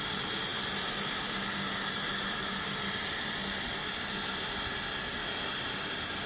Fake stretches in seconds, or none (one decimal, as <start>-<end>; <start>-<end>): none